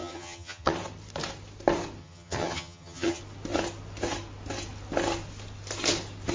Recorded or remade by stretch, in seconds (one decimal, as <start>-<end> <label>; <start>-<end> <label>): 0.0-0.7 remade; 0.7-2.0 recorded; 2.0-3.2 remade; 3.2-6.3 recorded